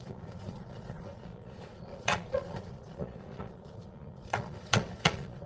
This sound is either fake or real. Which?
fake